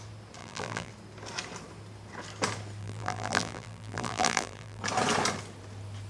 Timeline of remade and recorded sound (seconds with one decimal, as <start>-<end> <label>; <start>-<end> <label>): 0.0-0.4 recorded; 0.4-0.9 remade; 0.9-2.8 recorded; 2.8-4.8 remade; 4.8-6.1 recorded